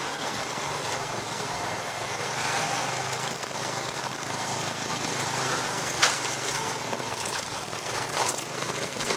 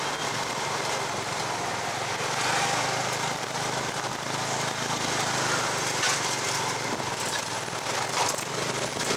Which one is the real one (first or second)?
second